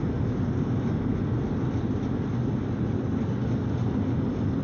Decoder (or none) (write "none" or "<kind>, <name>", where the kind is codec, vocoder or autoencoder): none